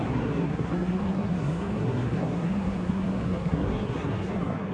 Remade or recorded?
remade